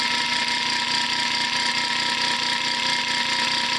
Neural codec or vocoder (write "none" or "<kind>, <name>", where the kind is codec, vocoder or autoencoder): none